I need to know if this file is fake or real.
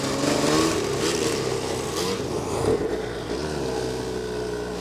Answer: real